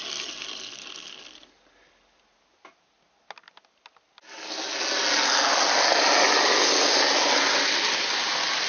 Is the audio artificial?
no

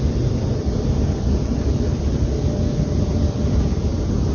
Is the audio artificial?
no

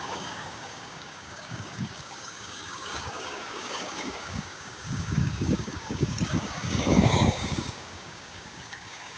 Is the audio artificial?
yes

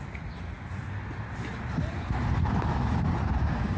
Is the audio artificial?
no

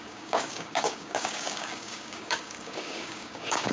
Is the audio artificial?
yes